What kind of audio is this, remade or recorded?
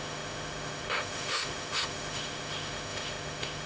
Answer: remade